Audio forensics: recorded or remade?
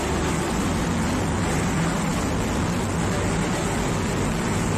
recorded